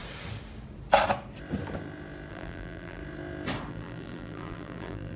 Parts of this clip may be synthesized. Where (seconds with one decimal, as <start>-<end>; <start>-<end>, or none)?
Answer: 2.3-3.0; 3.7-5.2